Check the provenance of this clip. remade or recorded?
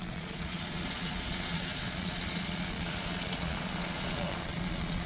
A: remade